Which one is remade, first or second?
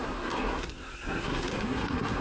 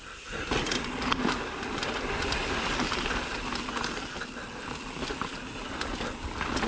first